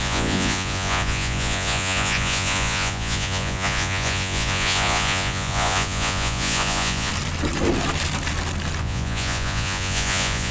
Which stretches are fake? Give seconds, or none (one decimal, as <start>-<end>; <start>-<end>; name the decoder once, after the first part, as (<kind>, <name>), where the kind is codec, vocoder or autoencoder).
0.0-7.1 (vocoder, Vocos); 8.8-10.5